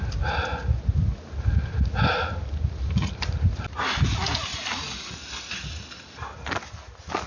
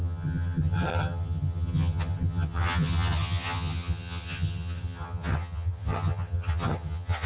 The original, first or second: first